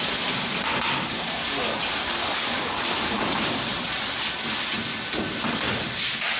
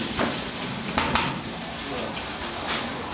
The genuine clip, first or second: second